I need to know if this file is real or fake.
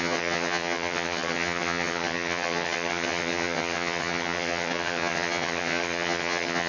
fake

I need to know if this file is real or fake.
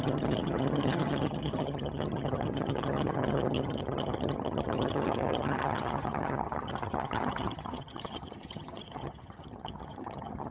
fake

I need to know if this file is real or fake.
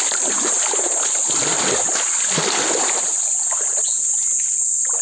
real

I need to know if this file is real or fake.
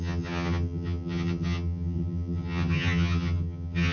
fake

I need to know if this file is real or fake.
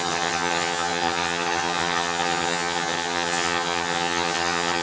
fake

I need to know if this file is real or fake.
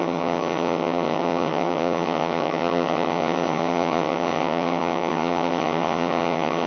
fake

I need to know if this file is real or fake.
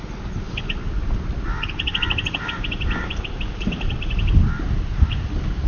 real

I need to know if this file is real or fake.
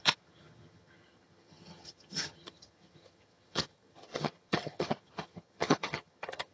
fake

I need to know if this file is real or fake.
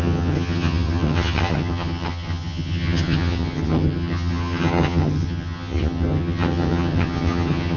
fake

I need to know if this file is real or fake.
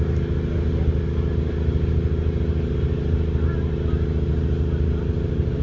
real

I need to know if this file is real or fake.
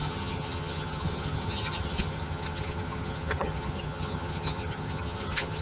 fake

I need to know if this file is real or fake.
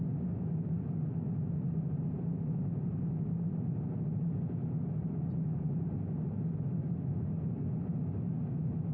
real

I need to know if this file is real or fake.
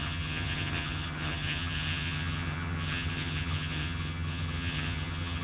fake